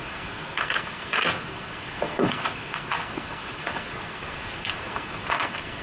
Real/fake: fake